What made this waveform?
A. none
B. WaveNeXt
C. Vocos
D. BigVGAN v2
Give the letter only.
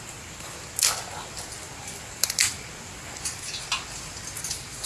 A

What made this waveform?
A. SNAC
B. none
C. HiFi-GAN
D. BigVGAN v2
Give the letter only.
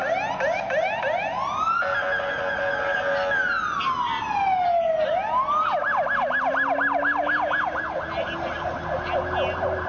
B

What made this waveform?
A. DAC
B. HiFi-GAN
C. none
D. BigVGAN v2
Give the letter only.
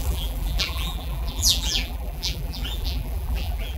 D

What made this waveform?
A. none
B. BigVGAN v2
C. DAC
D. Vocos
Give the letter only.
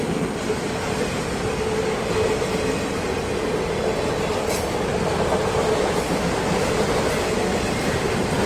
A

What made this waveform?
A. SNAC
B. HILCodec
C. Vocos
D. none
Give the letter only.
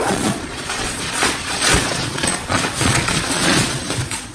C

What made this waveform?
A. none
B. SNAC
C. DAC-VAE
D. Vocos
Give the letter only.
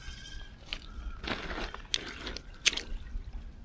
A